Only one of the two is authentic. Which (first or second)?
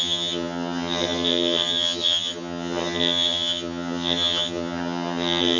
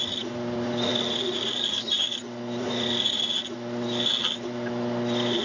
second